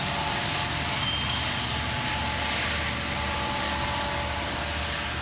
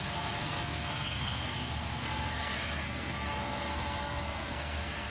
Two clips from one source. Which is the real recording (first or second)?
first